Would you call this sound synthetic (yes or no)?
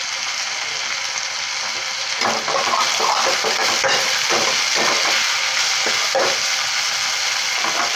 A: no